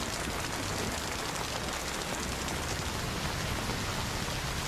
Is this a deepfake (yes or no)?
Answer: no